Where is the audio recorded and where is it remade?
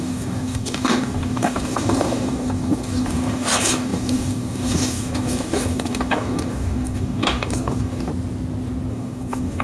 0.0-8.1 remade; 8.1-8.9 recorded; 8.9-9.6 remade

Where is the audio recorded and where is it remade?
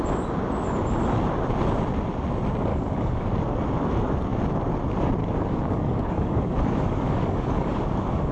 0.0-2.7 recorded; 2.7-3.3 remade; 3.3-5.2 recorded; 5.2-8.3 remade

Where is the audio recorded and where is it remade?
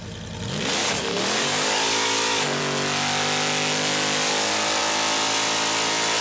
0.0-0.8 recorded; 0.8-2.6 remade; 2.6-6.2 recorded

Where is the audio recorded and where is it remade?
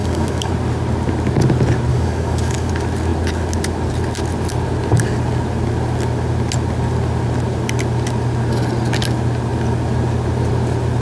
0.0-0.5 remade; 0.5-1.9 recorded; 1.9-2.7 remade; 2.7-11.0 recorded